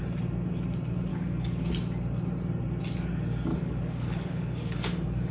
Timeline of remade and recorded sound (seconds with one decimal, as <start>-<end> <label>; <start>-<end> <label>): 0.0-1.1 recorded; 1.1-1.7 remade; 1.7-3.5 recorded; 3.5-5.3 remade